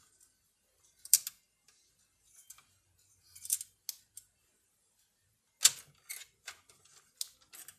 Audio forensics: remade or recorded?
recorded